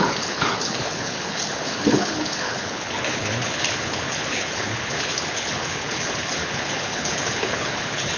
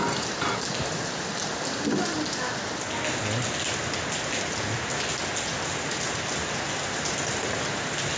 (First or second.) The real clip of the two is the second